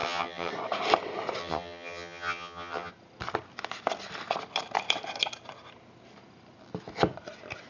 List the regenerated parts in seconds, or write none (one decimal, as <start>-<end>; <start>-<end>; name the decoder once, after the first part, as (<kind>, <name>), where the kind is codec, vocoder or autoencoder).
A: 0.0-0.5 (vocoder, HiFi-GAN); 1.4-2.9